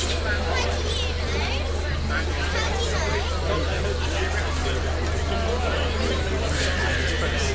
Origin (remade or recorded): recorded